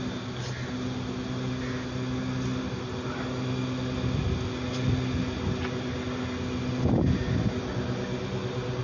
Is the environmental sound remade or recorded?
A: recorded